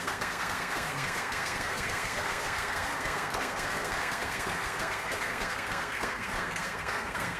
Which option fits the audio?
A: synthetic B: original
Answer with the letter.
A